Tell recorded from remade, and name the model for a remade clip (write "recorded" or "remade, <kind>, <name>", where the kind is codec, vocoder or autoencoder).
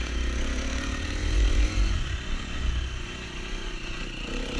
remade, vocoder, Vocos